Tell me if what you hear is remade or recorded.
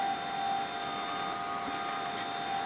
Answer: recorded